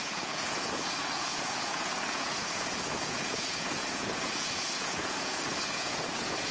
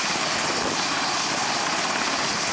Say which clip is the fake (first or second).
first